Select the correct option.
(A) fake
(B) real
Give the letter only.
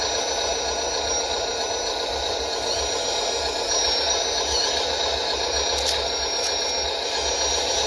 B